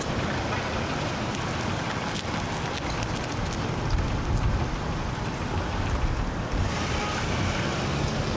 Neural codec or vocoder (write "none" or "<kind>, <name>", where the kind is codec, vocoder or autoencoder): none